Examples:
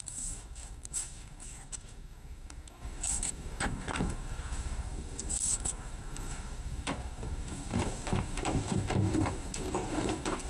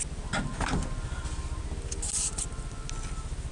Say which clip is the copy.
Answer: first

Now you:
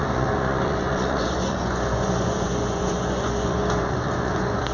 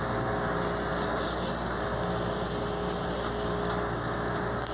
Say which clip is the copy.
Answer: first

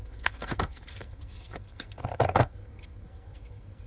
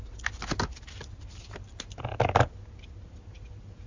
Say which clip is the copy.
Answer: first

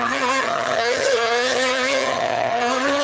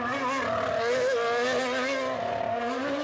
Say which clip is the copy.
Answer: first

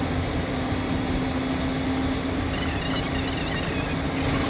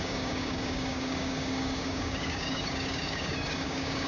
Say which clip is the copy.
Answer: second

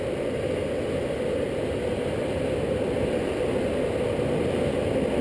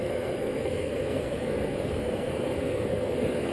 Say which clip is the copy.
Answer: second